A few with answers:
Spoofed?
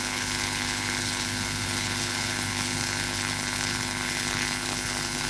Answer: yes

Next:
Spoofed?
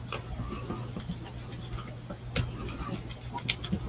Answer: no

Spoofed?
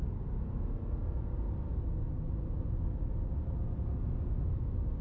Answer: no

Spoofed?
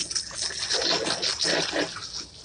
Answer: no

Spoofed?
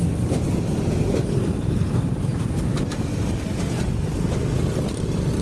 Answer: no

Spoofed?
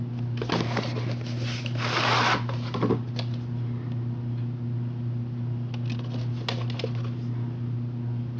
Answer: no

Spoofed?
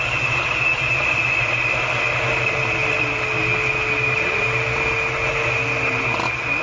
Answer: no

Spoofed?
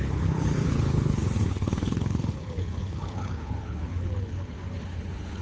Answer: yes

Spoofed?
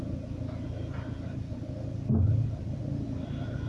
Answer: no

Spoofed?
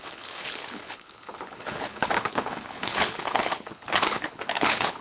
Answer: yes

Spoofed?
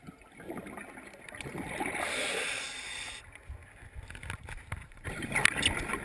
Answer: no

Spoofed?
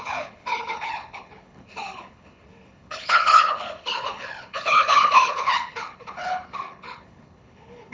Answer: yes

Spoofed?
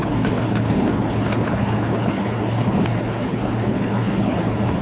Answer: yes